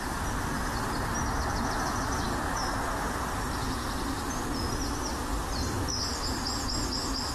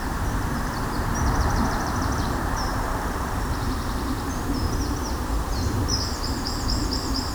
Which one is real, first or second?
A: first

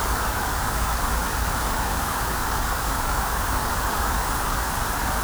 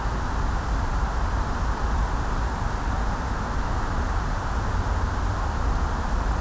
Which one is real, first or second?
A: second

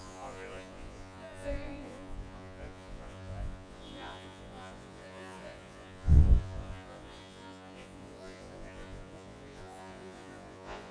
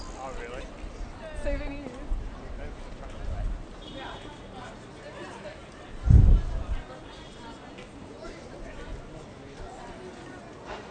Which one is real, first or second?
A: second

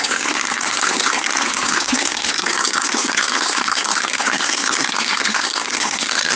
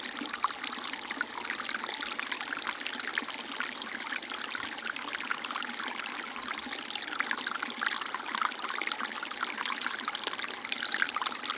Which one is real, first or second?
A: second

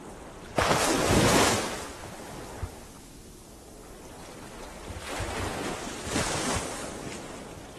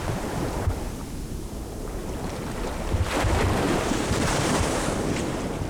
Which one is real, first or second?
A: first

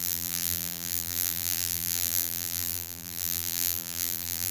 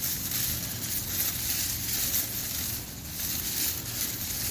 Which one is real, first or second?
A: second